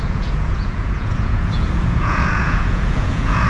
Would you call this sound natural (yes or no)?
no